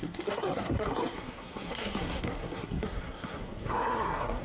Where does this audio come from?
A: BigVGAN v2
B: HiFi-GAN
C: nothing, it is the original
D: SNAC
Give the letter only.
D